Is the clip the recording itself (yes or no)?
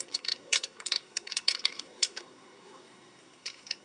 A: no